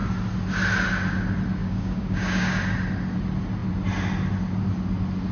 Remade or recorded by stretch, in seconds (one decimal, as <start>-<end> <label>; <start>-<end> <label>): 0.0-1.6 recorded; 1.6-2.6 remade; 2.6-5.3 recorded